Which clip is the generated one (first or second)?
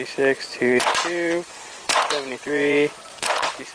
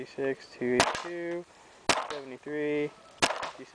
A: first